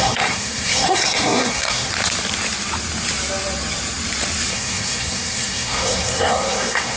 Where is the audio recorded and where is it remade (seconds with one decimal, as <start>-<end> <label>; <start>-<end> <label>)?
0.0-1.9 remade; 1.9-4.5 recorded; 4.5-7.0 remade